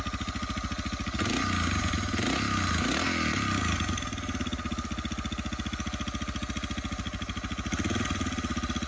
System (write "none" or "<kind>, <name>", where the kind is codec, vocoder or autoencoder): none